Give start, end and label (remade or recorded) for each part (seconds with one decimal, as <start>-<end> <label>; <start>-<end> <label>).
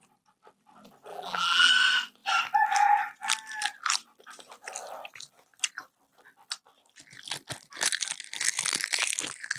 0.0-1.1 recorded; 1.1-1.7 remade; 1.7-9.6 recorded